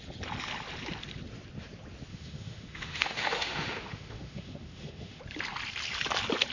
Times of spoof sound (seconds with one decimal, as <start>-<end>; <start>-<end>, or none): 2.1-5.2